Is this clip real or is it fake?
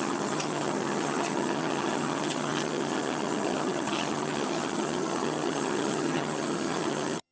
fake